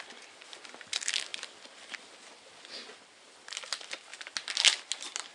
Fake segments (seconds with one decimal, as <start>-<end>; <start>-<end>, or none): none

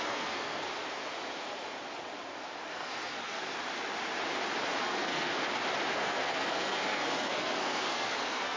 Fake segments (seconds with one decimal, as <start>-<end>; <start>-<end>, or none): 0.0-0.7; 2.7-3.4; 4.8-5.3; 5.9-8.6

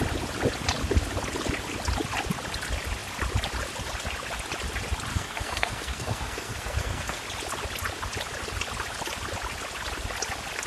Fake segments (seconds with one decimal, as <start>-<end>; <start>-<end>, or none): 5.1-7.2

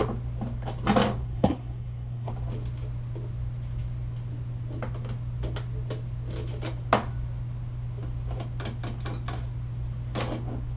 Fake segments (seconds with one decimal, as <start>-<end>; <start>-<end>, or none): 1.2-2.3

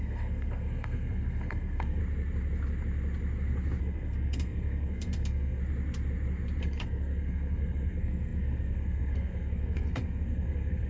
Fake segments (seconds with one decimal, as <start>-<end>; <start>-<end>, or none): 0.0-2.0; 3.8-5.6; 6.6-10.9

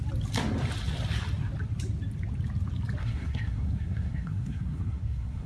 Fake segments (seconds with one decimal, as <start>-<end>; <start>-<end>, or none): 3.0-5.5

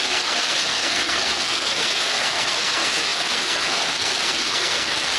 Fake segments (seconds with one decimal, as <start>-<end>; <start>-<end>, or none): 0.0-5.2

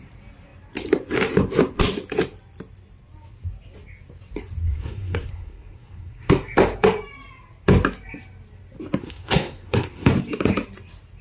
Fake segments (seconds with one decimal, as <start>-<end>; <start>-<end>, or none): 4.6-6.3; 9.0-10.1